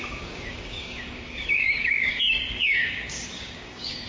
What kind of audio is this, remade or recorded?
remade